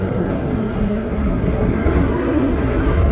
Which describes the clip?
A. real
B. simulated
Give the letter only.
B